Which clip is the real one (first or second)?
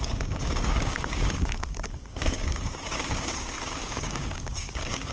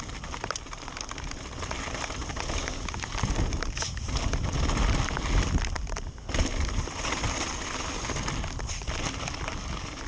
second